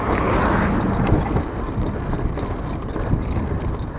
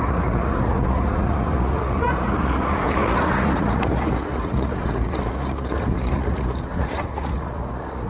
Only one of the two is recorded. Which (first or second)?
first